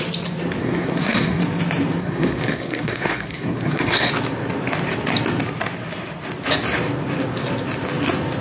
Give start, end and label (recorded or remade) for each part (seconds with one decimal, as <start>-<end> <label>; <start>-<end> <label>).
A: 0.0-0.6 recorded; 0.6-1.4 remade; 1.4-2.0 recorded; 2.0-4.1 remade; 4.1-8.4 recorded